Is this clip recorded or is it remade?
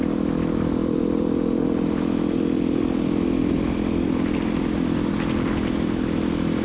remade